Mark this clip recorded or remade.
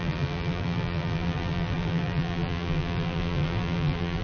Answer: remade